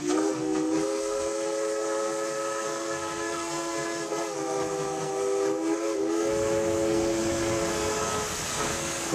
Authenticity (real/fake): fake